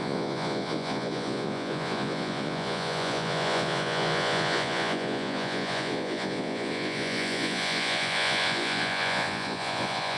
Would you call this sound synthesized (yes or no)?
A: yes